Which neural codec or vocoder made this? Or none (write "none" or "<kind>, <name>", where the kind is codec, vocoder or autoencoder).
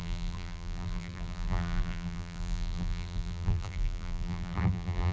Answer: vocoder, BigVGAN v2